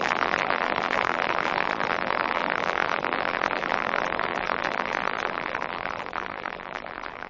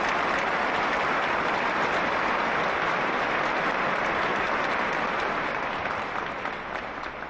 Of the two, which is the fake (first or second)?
first